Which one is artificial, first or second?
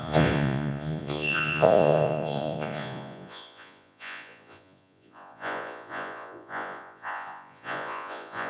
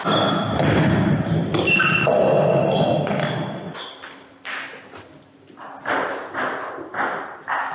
first